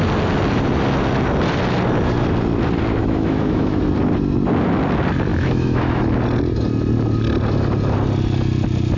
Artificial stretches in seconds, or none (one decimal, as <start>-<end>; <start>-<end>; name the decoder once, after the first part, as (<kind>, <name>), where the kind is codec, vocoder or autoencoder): 3.0-3.8 (autoencoder, DAC-VAE); 5.3-6.0